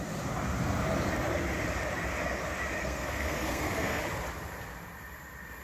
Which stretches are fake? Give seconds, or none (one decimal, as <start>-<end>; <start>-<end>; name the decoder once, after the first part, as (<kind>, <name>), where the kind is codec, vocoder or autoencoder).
2.8-4.0 (codec, SNAC)